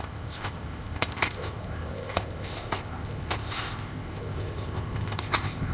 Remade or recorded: remade